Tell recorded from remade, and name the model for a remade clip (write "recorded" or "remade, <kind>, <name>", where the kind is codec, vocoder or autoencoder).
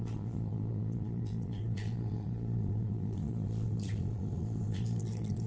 remade, vocoder, Vocos